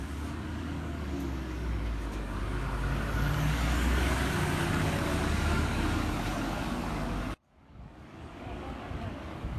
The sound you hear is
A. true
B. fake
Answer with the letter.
B